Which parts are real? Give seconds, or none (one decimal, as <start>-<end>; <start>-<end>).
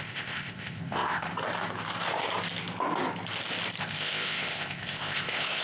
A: 1.3-3.8